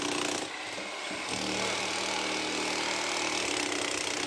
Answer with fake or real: real